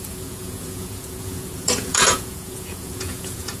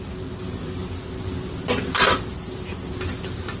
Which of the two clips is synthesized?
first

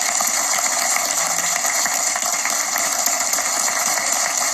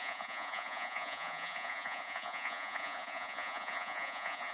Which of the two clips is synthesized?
second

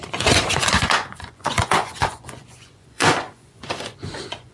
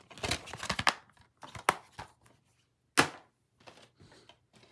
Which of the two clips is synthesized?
first